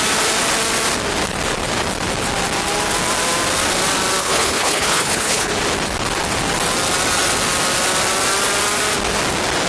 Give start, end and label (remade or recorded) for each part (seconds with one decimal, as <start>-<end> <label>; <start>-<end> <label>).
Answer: 0.0-4.2 recorded; 4.2-5.5 remade; 5.5-9.7 recorded